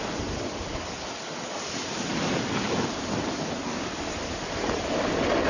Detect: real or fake real